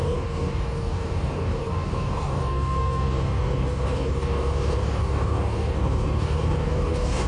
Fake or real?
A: fake